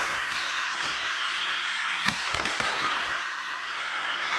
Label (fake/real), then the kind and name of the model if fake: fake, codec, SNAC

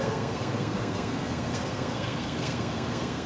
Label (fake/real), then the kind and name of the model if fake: fake, codec, SNAC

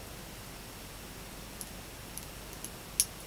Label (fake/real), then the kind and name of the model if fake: real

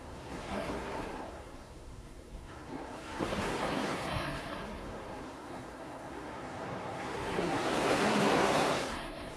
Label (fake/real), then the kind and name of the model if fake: fake, codec, SNAC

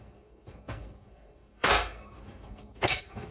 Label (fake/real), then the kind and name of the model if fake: fake, codec, SNAC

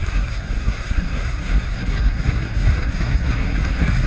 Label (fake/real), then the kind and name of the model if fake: fake, codec, SNAC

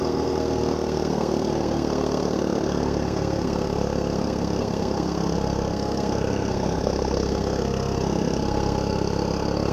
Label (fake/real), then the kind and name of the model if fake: fake, codec, SNAC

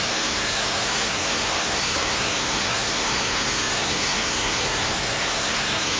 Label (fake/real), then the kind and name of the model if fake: fake, codec, SNAC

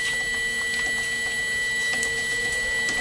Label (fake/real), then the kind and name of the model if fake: real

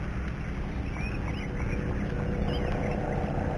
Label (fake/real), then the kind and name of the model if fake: real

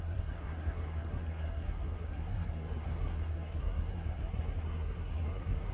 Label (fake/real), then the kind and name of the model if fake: fake, codec, SNAC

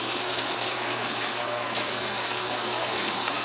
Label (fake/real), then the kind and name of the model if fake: fake, codec, SNAC